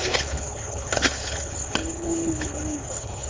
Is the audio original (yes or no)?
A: no